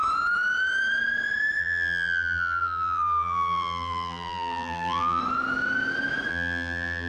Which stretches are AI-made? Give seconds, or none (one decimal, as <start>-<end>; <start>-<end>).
1.6-5.2; 6.3-7.1